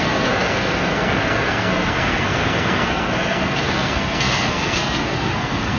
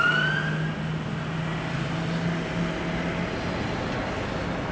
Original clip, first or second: second